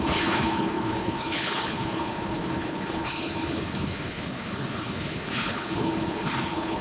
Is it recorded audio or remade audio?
remade